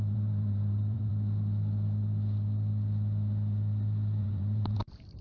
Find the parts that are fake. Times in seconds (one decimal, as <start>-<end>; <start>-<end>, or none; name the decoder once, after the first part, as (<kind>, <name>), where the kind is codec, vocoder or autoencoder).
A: 0.0-1.1 (vocoder, BigVGAN v2); 4.2-5.2